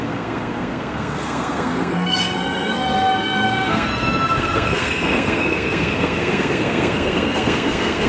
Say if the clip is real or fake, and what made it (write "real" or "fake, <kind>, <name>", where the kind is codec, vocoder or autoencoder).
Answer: fake, codec, SNAC